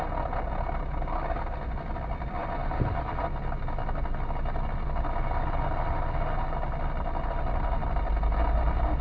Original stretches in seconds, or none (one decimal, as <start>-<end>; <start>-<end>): 0.0-9.0